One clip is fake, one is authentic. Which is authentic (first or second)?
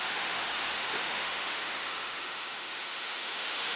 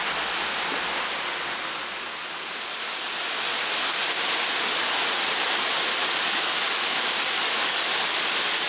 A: second